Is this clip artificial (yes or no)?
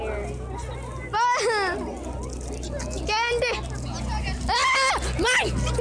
no